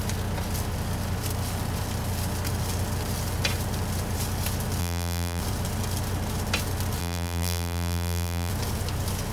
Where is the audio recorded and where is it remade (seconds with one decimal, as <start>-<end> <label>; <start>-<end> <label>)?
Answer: 0.0-4.8 recorded; 4.8-5.4 remade; 5.4-7.0 recorded; 7.0-8.5 remade; 8.5-9.3 recorded